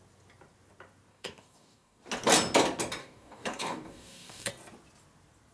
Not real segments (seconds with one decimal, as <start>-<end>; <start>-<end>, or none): 1.1-2.0; 3.0-4.5